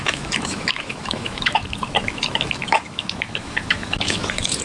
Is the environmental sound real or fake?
fake